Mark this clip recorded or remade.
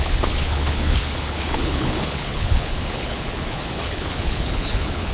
remade